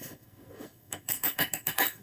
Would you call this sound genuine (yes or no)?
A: no